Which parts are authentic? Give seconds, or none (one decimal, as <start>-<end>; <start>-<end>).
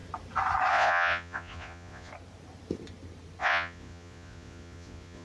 0.0-0.7; 2.1-3.4